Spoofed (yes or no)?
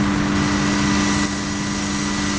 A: no